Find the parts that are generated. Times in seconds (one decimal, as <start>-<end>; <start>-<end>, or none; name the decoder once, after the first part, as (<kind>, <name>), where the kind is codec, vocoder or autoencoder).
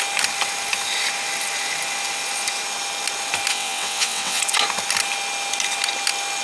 3.5-4.4 (vocoder, WaveNeXt)